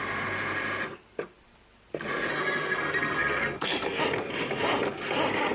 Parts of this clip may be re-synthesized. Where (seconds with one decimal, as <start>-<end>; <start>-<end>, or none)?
2.3-4.0